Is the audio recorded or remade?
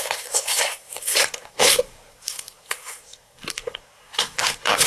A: remade